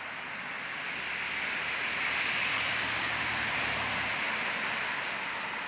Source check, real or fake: real